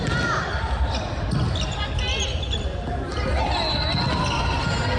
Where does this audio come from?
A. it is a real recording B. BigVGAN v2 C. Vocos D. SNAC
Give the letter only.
A